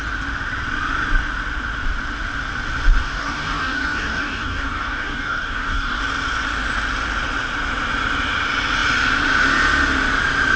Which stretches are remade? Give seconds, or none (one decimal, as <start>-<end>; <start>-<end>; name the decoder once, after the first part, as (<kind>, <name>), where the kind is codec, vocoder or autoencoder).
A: 3.0-6.0 (codec, DAC)